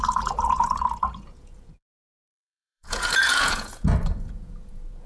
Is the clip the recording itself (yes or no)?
no